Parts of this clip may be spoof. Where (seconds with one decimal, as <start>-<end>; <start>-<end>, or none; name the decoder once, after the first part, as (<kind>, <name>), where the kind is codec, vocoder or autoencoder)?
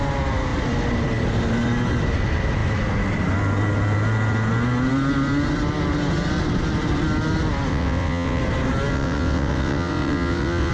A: 7.7-8.4 (vocoder, WaveNeXt); 8.9-10.7